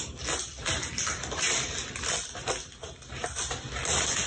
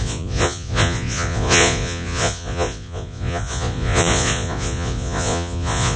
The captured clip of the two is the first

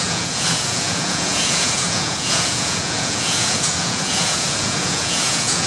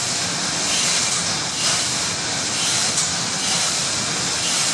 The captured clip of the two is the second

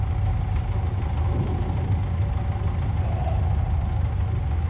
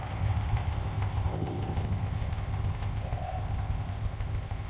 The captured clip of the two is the first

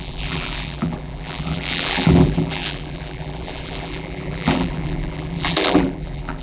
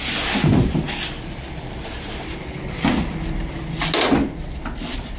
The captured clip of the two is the second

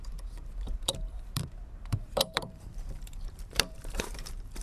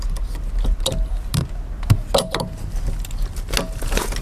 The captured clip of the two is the second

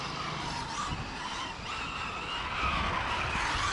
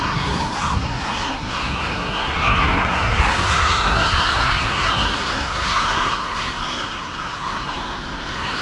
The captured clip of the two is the first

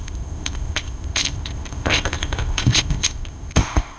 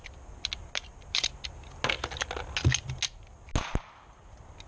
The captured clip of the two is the second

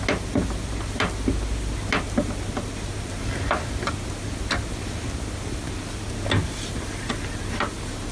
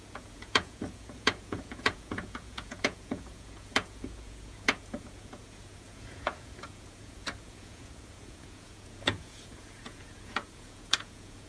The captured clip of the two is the first